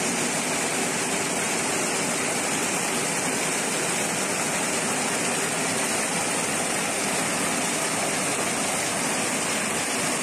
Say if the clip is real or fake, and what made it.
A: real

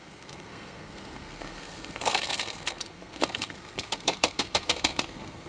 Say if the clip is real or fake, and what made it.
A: fake, codec, SNAC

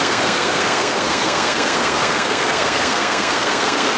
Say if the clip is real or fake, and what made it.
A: fake, codec, SNAC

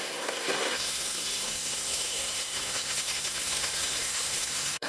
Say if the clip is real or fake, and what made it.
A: fake, codec, SNAC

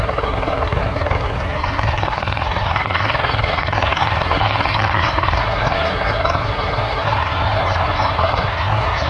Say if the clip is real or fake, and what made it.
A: fake, codec, SNAC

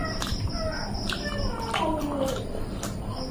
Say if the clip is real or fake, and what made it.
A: real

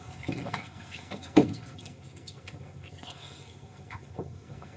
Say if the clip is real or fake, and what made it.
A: fake, codec, SNAC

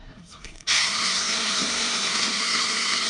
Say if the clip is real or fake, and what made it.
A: fake, codec, SNAC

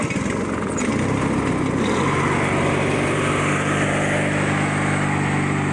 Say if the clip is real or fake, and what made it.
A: real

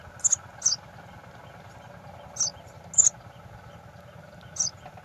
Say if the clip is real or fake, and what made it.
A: real